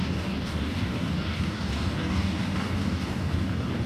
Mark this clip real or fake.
fake